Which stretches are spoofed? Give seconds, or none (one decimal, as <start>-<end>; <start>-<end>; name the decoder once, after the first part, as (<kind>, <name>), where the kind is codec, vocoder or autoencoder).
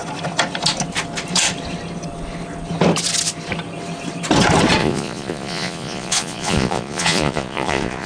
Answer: 4.8-8.1 (vocoder, Vocos)